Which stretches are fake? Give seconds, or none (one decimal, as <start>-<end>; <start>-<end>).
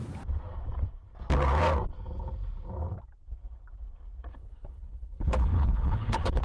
4.3-6.4